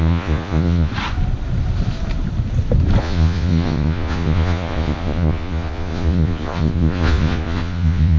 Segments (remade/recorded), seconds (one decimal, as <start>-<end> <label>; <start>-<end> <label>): 0.0-0.9 remade; 0.9-3.0 recorded; 3.0-8.2 remade